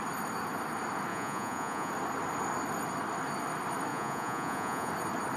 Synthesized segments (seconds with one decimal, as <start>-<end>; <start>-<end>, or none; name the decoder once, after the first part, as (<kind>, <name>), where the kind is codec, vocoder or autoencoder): 1.1-1.9 (vocoder, Vocos); 3.9-4.9